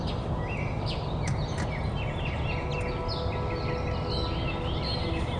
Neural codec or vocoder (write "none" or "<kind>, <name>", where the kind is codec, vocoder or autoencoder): none